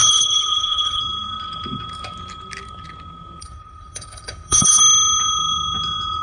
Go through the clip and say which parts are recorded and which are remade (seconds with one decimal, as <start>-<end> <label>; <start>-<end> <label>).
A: 0.0-1.0 remade; 1.0-3.4 recorded; 3.4-4.8 remade; 4.8-6.2 recorded